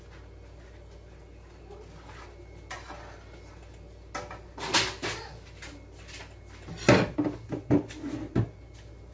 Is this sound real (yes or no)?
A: yes